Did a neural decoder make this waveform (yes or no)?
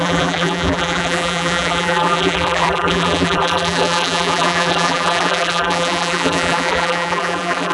yes